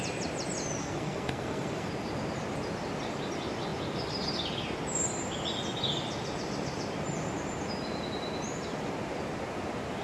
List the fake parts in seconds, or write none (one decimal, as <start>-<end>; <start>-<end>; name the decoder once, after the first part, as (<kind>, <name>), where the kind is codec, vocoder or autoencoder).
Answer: 0.8-1.9 (codec, SNAC)